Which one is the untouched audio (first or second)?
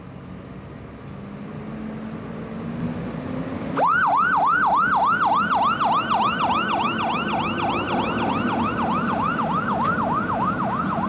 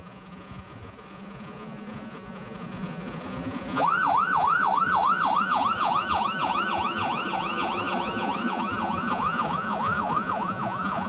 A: first